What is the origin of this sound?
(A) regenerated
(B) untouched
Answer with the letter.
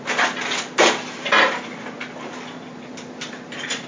B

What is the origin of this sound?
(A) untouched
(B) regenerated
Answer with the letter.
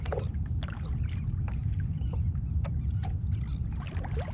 A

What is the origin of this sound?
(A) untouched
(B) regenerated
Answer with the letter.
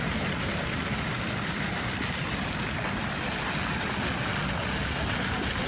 A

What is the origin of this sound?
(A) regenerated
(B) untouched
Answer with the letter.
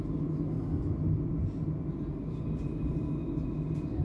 B